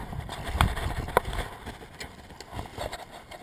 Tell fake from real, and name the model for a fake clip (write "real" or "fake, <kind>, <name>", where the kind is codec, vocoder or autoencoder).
real